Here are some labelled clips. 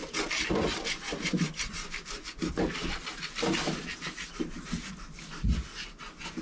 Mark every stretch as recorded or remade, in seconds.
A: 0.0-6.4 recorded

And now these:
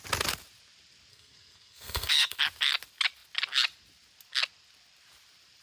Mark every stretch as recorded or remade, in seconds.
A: 0.0-1.1 recorded; 1.1-2.4 remade; 2.4-5.6 recorded

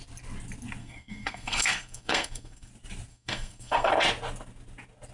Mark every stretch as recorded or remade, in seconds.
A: 0.0-0.8 recorded; 0.8-2.7 remade; 2.7-3.1 recorded; 3.1-3.9 remade; 3.9-5.1 recorded

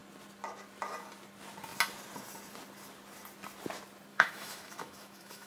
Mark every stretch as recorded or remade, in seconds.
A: 0.0-4.1 recorded; 4.1-5.5 remade

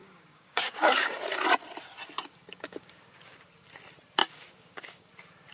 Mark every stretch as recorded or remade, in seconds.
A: 0.0-1.2 remade; 1.2-2.5 recorded; 2.5-3.5 remade; 3.5-4.2 recorded; 4.2-5.1 remade; 5.1-5.5 recorded

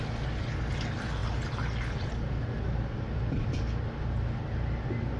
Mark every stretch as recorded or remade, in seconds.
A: 0.0-5.2 recorded

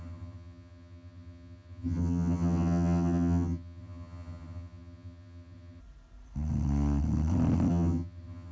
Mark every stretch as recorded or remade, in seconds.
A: 0.0-5.8 remade; 5.8-7.7 recorded; 7.7-8.5 remade

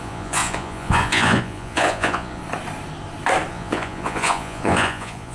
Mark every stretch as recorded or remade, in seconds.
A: 0.0-2.4 remade; 2.4-3.5 recorded; 3.5-5.3 remade